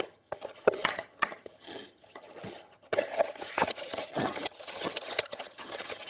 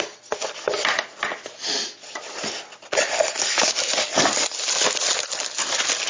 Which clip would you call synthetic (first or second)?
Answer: first